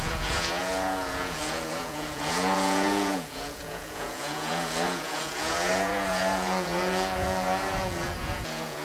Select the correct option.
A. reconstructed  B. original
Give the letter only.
A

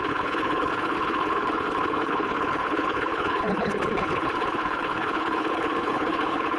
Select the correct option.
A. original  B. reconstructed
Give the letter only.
B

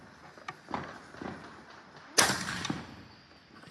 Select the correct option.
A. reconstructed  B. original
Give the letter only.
B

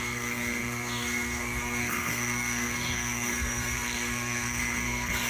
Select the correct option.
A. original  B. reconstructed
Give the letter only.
B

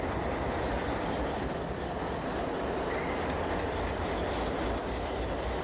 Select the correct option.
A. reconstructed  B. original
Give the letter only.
B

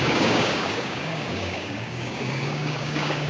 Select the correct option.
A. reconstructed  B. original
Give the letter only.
A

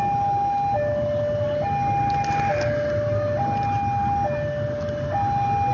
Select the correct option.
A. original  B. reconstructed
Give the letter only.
A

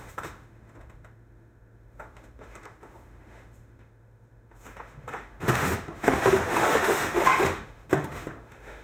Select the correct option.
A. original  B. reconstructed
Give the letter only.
B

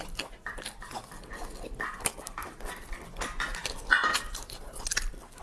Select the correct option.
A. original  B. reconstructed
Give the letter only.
A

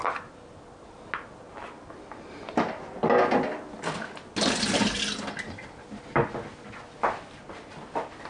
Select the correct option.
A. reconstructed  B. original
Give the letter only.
B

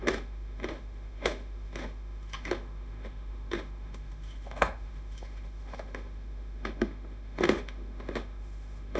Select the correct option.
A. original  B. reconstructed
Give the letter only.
B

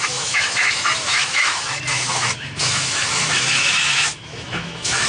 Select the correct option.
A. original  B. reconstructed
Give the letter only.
B